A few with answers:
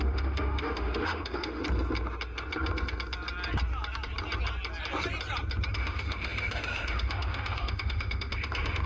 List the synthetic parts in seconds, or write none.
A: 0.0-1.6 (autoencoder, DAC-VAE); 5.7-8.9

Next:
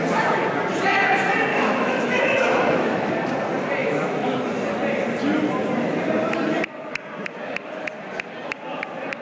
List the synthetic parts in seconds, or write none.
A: 1.5-3.1 (autoencoder, DAC-VAE); 3.8-4.4

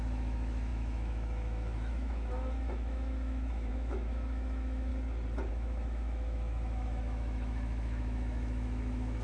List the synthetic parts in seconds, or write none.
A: 0.0-4.9 (autoencoder, DAC-VAE); 5.5-9.2

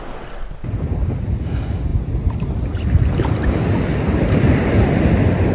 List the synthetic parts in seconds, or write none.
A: none